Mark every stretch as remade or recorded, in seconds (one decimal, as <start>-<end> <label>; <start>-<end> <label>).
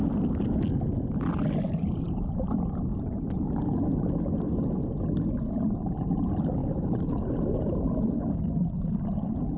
0.0-9.6 recorded